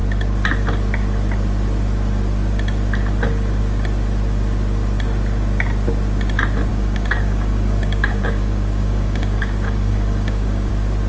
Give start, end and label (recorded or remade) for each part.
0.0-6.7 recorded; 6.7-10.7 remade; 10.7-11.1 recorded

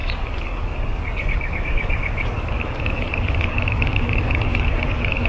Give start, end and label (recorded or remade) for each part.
0.0-5.3 remade

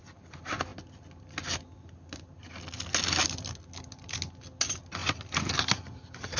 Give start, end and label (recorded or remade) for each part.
0.0-6.4 recorded

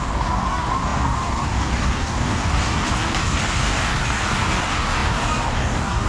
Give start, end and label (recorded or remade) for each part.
0.0-6.1 remade

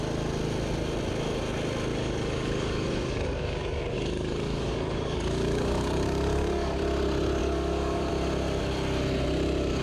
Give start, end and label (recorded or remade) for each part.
0.0-1.9 recorded; 1.9-6.8 remade; 6.8-7.4 recorded; 7.4-8.1 remade; 8.1-9.8 recorded

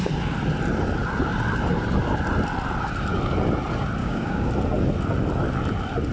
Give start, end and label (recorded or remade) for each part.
0.0-4.0 recorded; 4.0-4.5 remade; 4.5-6.1 recorded

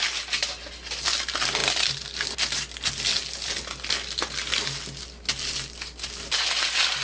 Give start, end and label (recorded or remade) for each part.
0.0-7.0 recorded